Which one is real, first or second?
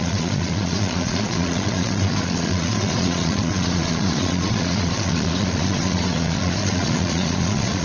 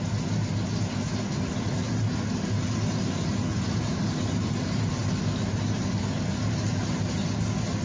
second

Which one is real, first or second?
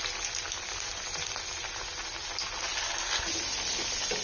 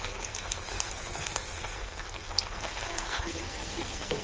first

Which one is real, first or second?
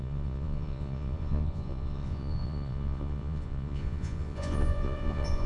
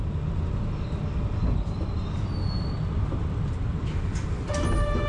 second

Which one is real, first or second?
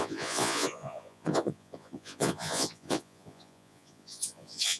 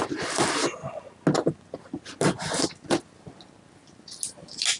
second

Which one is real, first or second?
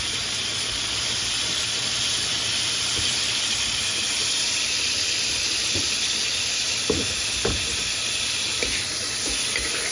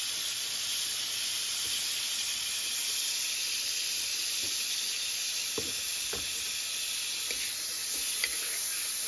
second